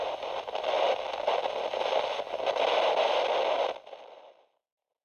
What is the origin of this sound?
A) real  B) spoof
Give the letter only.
A